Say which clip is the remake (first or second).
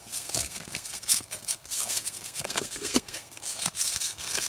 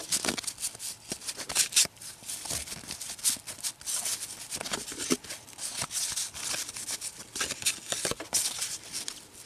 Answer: first